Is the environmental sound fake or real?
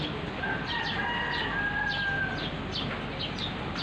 real